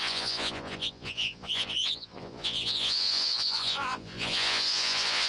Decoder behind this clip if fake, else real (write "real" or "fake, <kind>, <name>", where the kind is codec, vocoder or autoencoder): fake, vocoder, Vocos